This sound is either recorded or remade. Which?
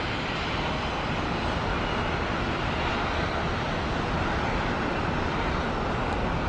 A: recorded